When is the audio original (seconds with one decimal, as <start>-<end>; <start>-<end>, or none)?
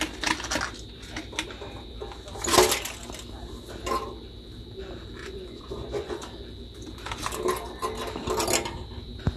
0.0-5.2; 6.2-9.4